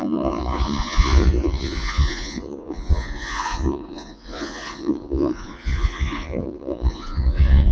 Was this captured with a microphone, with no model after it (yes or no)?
no